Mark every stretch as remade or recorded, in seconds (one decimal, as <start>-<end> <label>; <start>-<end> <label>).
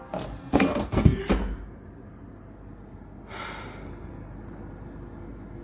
0.0-0.4 recorded; 0.4-1.2 remade; 1.2-5.6 recorded